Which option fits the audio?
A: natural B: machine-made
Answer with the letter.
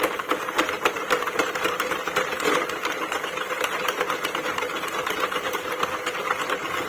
B